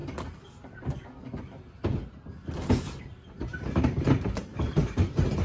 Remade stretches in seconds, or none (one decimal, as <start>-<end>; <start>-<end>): 3.0-5.4